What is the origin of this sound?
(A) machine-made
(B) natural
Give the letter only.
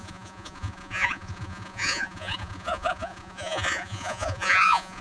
A